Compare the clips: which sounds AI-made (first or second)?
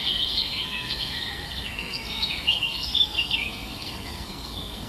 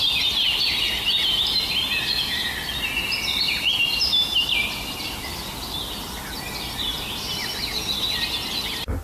first